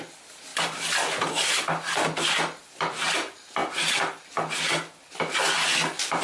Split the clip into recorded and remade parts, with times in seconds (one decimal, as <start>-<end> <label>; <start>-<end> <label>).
0.0-6.2 recorded

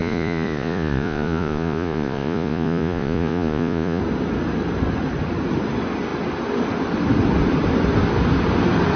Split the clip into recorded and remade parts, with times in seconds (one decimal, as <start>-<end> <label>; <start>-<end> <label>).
0.0-4.0 remade; 4.0-9.0 recorded

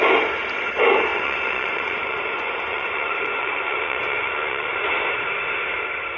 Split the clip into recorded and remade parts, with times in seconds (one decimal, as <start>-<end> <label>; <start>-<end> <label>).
0.0-1.1 recorded; 1.1-4.8 remade; 4.8-6.2 recorded

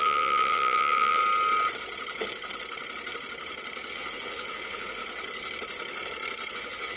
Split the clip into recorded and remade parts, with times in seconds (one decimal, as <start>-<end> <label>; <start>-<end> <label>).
0.0-1.2 remade; 1.2-3.9 recorded; 3.9-5.0 remade; 5.0-6.5 recorded; 6.5-7.0 remade